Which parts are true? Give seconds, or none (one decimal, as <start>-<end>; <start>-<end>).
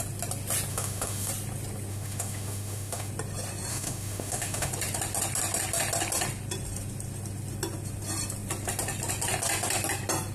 0.0-0.7; 1.3-1.9; 3.1-3.7; 4.7-10.3